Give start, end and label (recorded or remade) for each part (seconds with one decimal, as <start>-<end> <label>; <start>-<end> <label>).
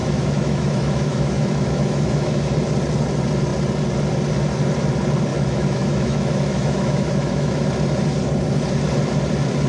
0.0-2.5 remade; 2.5-5.3 recorded; 5.3-7.5 remade; 7.5-9.7 recorded